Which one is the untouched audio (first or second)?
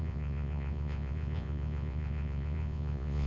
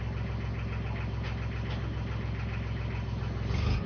second